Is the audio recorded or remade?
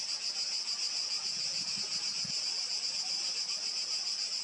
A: recorded